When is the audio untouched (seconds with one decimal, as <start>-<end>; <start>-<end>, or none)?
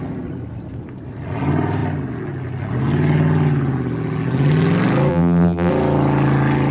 0.0-5.1; 5.7-6.7